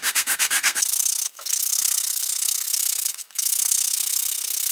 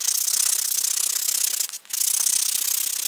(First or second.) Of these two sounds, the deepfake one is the first